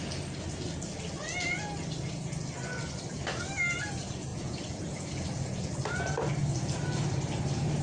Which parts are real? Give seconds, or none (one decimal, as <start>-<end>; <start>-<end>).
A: 0.0-4.3; 5.7-7.8